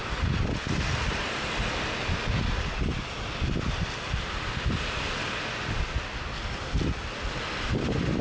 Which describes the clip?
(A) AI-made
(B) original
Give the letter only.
B